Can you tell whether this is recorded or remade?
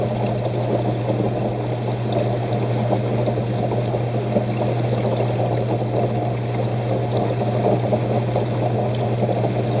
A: recorded